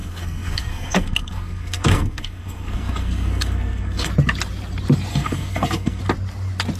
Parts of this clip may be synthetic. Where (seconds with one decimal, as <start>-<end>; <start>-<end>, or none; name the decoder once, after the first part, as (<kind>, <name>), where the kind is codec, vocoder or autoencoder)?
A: 0.0-4.1 (codec, SNAC); 5.1-6.0